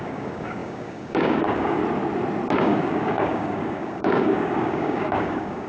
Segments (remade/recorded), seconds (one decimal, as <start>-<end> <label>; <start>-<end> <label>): 0.0-1.8 remade; 1.8-2.6 recorded; 2.6-5.7 remade